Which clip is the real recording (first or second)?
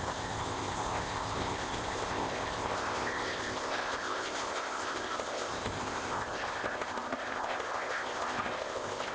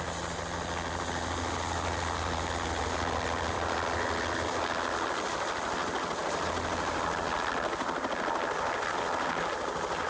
second